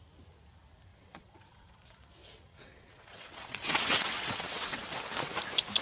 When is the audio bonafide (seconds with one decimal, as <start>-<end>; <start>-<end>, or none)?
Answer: 0.0-0.9; 1.7-2.2; 4.8-5.8